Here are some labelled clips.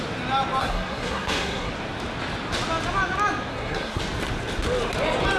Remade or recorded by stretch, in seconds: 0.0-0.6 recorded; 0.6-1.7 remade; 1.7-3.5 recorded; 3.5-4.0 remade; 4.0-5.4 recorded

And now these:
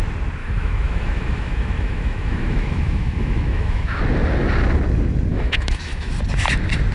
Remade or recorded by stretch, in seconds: 0.0-0.4 recorded; 0.4-4.0 remade; 4.0-5.3 recorded; 5.3-6.1 remade; 6.1-6.9 recorded

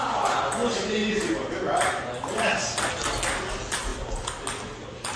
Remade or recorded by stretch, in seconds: 0.0-1.0 recorded; 1.0-2.9 remade; 2.9-5.2 recorded

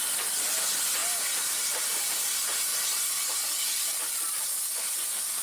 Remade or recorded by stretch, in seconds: 0.0-5.4 recorded

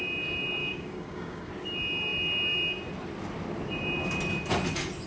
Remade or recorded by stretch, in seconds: 0.0-0.6 recorded; 0.6-1.5 remade; 1.5-5.1 recorded

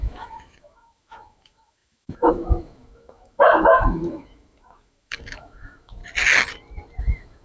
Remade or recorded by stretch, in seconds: 0.0-6.0 remade; 6.0-7.0 recorded; 7.0-7.4 remade

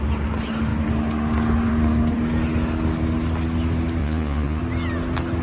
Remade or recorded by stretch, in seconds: 0.0-4.0 recorded; 4.0-4.6 remade; 4.6-5.4 recorded